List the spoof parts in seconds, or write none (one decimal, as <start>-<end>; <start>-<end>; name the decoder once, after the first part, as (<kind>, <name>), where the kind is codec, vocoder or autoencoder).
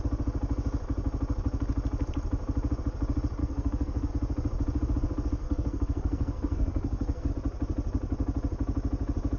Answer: 3.4-4.1 (codec, SNAC); 5.4-7.3